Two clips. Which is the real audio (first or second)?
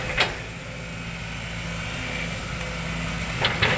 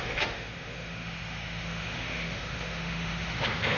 first